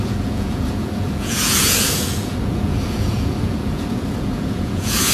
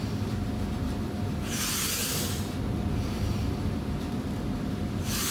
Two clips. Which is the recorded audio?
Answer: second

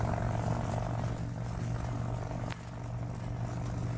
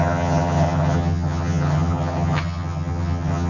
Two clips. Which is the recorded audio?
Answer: first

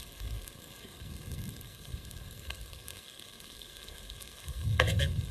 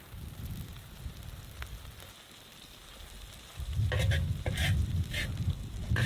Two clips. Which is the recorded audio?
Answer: second